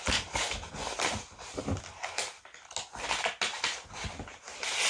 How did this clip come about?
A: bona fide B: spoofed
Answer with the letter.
A